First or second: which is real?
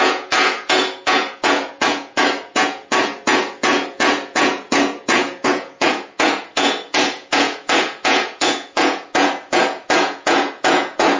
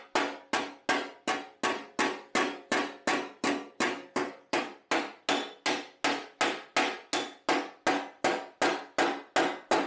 second